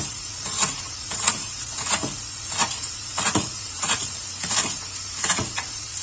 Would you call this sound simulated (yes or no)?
yes